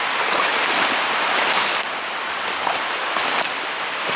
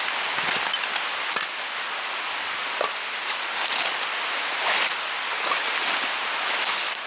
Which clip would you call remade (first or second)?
first